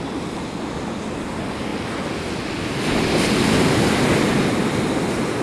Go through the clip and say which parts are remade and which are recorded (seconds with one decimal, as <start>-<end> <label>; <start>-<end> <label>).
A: 0.0-5.4 recorded